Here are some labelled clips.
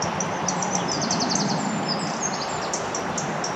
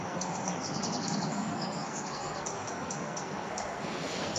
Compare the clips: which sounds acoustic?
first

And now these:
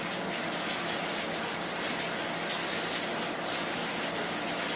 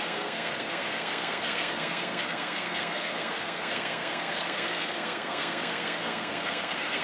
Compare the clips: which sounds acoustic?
first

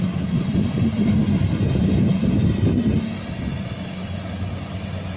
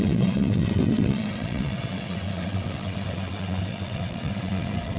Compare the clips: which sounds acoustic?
first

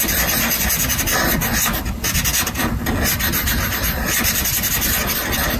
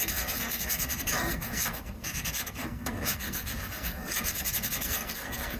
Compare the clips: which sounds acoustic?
first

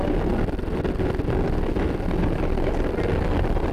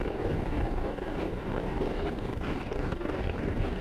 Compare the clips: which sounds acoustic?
first